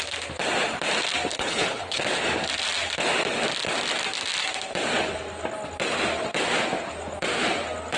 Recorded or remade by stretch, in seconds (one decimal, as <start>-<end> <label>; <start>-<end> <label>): 0.0-1.3 recorded; 1.3-2.0 remade; 2.0-8.0 recorded